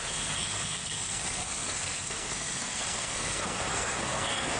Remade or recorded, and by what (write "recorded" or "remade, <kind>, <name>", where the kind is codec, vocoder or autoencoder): remade, codec, SNAC